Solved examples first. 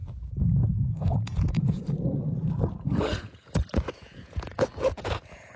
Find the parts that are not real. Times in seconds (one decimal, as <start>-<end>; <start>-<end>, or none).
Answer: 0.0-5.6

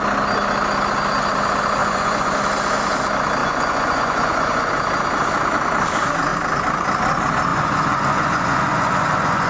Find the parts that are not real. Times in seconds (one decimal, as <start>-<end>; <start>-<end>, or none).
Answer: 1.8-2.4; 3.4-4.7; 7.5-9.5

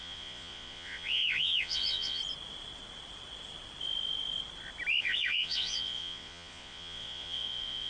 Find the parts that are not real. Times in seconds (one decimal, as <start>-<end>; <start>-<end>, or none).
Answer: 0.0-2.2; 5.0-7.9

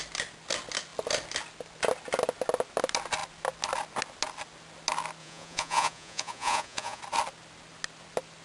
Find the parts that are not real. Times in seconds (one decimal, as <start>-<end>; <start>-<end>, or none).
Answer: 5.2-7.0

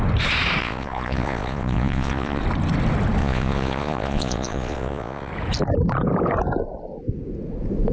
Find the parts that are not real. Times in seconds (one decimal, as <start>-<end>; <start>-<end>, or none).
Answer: 0.6-2.4; 3.2-5.3

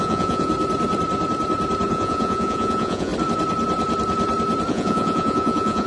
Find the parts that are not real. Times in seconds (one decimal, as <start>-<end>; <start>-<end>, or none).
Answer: 0.0-0.5; 1.9-3.1; 4.7-5.9